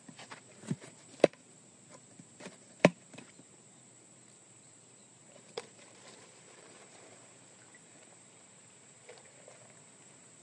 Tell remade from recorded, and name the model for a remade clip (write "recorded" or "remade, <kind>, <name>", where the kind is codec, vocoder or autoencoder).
remade, vocoder, BigVGAN v2